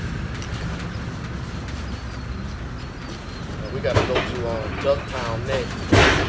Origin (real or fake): real